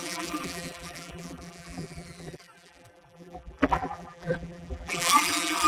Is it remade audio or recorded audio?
remade